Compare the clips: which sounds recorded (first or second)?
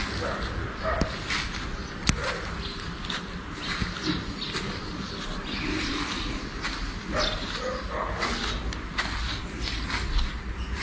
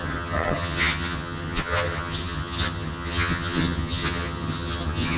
first